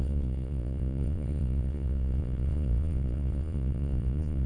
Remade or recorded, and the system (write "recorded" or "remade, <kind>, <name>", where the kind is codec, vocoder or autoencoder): remade, vocoder, Vocos